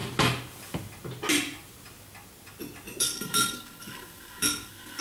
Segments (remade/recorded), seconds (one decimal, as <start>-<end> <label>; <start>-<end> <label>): 0.0-3.0 recorded; 3.0-5.0 remade